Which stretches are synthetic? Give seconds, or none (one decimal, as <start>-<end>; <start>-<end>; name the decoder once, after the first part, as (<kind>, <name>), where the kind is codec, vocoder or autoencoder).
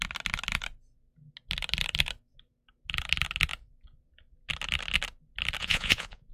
5.6-6.3 (vocoder, Vocos)